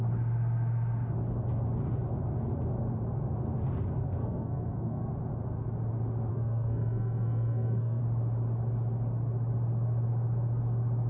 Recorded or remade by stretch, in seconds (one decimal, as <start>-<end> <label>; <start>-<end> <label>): 0.0-4.0 recorded; 4.0-5.1 remade; 5.1-6.3 recorded; 6.3-8.0 remade; 8.0-11.1 recorded